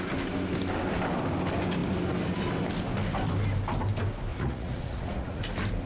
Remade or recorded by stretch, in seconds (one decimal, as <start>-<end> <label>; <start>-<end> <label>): 0.0-4.3 recorded; 4.3-5.4 remade; 5.4-5.9 recorded

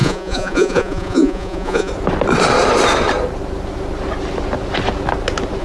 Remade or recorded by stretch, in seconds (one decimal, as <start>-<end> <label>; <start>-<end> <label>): 0.0-1.9 remade; 1.9-5.6 recorded

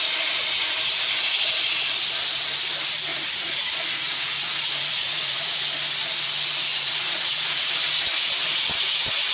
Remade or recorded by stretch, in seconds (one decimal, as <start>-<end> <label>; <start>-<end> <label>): 0.0-3.1 recorded; 3.1-5.6 remade; 5.6-6.7 recorded; 6.7-7.6 remade; 7.6-9.3 recorded

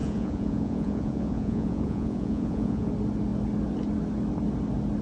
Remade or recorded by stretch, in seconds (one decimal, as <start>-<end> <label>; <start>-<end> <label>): 0.0-2.9 remade; 2.9-5.0 recorded